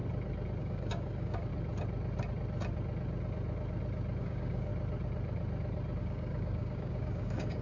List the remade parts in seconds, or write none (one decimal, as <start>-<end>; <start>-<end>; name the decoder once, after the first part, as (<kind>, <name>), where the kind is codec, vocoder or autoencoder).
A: 0.6-1.5 (codec, DAC); 4.2-4.7; 6.0-7.6